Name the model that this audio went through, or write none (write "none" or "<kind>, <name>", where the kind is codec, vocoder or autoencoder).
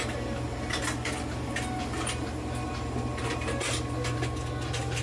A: none